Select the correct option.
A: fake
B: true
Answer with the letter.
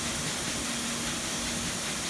B